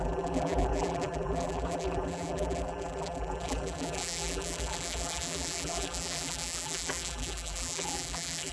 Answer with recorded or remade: remade